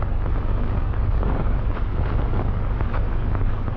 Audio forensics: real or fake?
fake